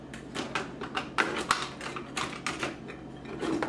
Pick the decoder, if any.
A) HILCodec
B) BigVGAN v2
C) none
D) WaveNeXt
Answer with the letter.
C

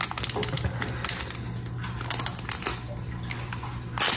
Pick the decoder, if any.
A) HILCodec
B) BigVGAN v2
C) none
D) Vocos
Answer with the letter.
C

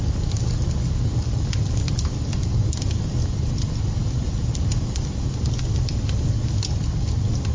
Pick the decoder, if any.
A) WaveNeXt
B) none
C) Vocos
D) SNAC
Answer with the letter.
B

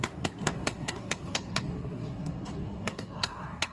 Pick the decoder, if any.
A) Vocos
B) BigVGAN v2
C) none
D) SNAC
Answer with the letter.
D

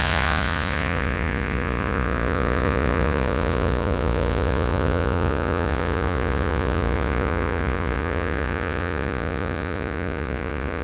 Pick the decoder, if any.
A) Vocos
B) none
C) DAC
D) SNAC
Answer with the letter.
A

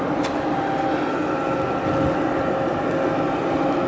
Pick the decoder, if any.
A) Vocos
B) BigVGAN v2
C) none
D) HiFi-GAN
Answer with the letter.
C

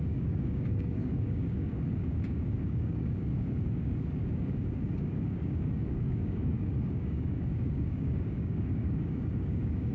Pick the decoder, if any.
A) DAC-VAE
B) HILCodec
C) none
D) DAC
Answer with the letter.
D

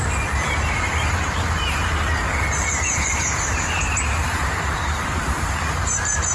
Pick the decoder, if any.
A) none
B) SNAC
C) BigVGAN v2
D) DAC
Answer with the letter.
C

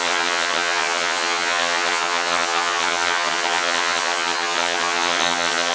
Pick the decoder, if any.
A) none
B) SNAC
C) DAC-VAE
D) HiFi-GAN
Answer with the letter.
D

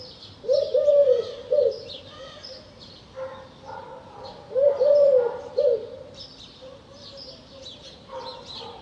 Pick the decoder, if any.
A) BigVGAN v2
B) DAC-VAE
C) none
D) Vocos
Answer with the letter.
A